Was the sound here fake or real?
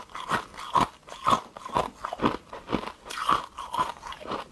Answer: real